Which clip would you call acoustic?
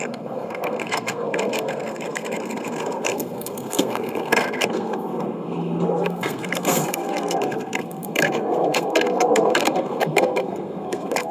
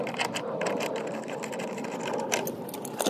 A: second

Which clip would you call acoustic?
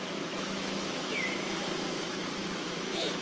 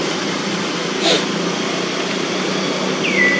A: second